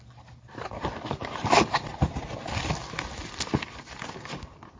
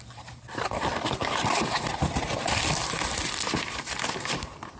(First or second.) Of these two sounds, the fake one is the second